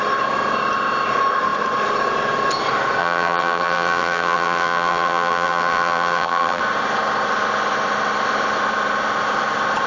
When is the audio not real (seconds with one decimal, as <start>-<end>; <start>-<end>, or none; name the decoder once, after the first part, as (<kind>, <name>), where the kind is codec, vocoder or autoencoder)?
3.0-6.6 (vocoder, BigVGAN v2)